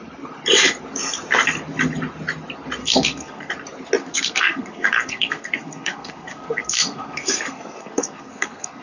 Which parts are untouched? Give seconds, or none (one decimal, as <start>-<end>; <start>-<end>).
0.0-2.8; 3.5-4.0